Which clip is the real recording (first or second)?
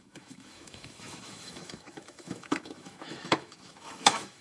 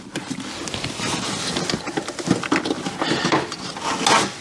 second